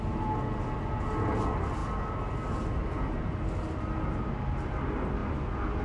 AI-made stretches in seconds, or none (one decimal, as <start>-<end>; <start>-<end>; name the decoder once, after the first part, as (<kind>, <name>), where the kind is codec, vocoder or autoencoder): none